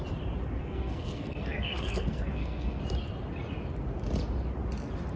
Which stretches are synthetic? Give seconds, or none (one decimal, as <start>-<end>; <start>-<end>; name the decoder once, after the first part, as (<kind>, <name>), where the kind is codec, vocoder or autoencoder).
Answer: 0.6-2.8 (codec, SNAC)